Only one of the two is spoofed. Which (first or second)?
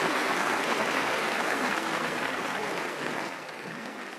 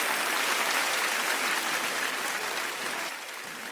first